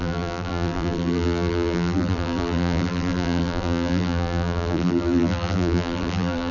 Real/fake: fake